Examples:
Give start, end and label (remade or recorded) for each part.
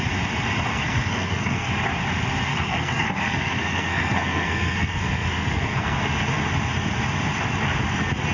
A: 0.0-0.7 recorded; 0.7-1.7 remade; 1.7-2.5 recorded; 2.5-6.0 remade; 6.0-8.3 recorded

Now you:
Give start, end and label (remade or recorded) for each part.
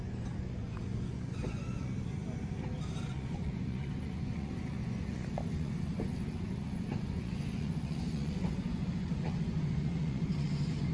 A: 0.0-2.2 remade; 2.2-3.1 recorded; 3.1-10.9 remade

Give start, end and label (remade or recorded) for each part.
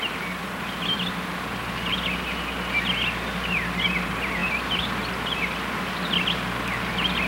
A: 0.0-7.3 recorded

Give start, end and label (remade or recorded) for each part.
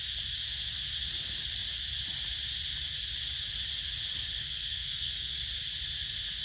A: 0.0-4.4 recorded; 4.4-5.4 remade; 5.4-6.4 recorded